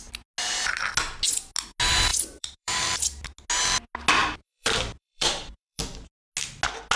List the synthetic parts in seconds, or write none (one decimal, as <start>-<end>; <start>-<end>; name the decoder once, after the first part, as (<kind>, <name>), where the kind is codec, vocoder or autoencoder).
2.1-3.0 (vocoder, BigVGAN v2); 4.2-5.8